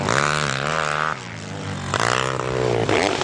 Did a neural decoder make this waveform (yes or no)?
no